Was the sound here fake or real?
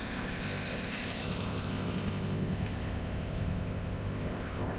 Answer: fake